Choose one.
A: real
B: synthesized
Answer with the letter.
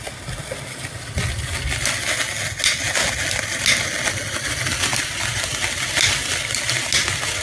A